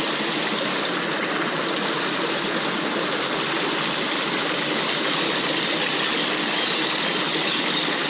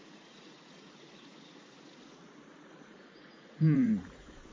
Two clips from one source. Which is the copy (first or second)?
second